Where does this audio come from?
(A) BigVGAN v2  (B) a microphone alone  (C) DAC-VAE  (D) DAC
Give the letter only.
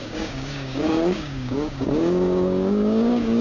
D